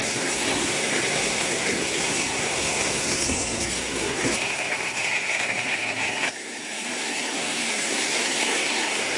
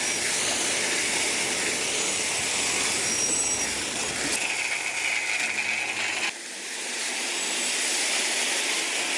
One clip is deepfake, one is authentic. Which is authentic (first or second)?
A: second